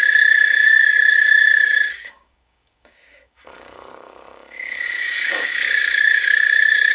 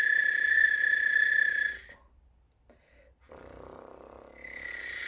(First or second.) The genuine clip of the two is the second